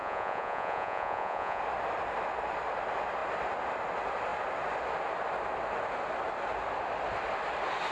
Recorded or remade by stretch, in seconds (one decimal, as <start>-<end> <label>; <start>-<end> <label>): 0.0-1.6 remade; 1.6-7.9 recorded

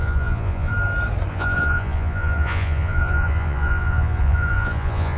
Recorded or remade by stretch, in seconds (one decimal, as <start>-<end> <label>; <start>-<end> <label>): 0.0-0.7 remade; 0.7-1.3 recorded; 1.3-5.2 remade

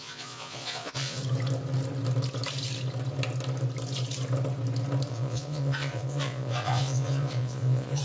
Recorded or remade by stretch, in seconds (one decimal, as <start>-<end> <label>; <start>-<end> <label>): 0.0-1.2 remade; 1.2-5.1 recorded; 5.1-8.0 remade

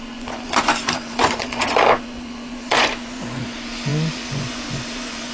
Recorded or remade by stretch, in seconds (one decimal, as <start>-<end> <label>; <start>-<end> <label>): 0.0-5.3 remade

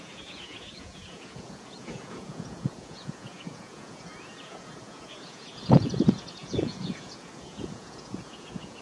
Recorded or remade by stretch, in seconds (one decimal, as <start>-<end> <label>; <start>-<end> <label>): 0.0-8.8 remade

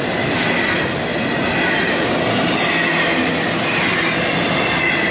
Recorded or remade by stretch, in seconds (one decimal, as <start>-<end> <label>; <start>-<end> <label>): 0.0-5.1 recorded

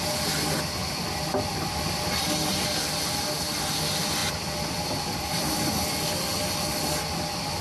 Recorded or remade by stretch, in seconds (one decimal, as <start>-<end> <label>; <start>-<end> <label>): 0.0-7.6 recorded

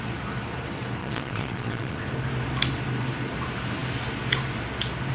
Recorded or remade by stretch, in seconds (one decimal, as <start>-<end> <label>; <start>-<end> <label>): 0.0-1.0 recorded; 1.0-2.0 remade; 2.0-5.1 recorded